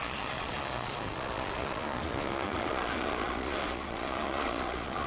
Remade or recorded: remade